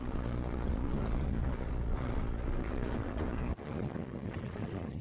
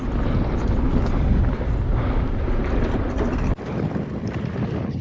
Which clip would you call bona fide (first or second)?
second